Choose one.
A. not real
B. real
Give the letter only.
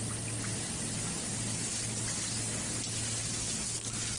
B